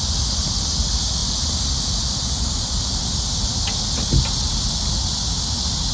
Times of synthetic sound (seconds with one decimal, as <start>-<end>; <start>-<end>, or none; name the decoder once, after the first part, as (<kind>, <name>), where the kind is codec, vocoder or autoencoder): none